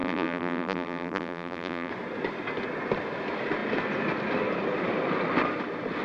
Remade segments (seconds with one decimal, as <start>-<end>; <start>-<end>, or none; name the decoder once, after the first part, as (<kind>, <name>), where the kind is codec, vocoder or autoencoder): 0.0-1.9 (vocoder, BigVGAN v2)